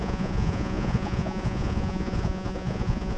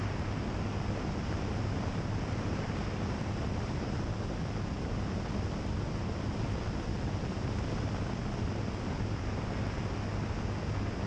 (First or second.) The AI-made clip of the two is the first